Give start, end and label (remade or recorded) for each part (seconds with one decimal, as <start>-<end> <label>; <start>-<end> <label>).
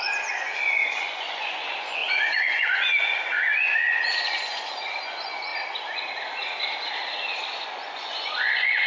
0.0-5.5 remade; 5.5-7.5 recorded; 7.5-8.9 remade